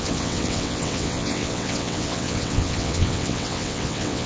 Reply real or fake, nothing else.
fake